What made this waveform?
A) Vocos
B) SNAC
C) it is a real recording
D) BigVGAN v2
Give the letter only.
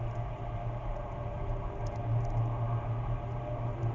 C